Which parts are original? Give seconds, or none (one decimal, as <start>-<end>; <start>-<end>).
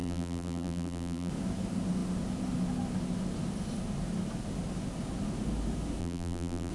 1.3-6.0